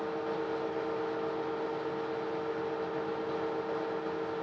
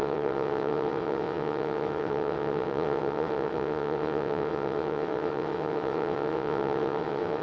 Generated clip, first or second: second